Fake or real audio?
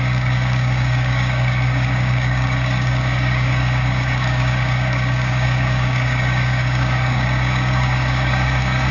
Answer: fake